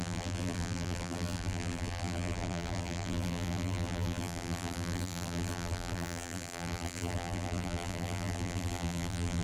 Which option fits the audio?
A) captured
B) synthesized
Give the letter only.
B